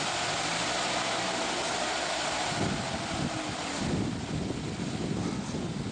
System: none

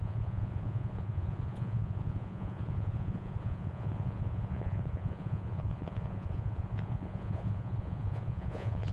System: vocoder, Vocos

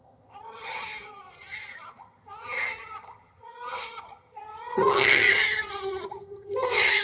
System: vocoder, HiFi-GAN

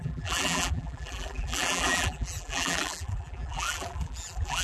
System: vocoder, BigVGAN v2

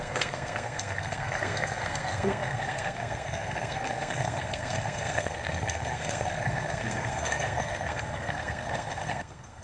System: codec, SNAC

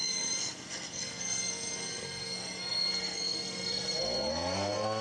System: codec, SNAC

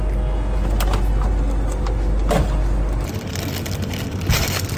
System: none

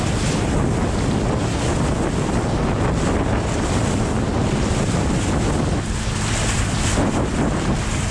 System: none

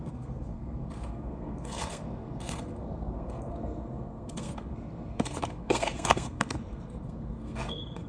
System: codec, SNAC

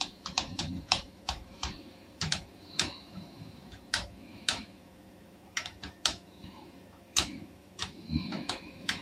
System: autoencoder, DAC-VAE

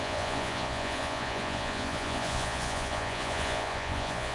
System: vocoder, Vocos